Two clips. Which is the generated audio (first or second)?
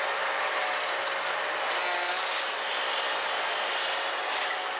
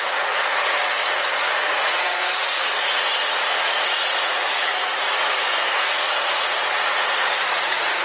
second